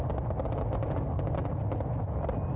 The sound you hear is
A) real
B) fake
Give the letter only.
A